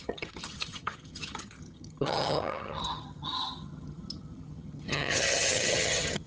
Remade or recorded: remade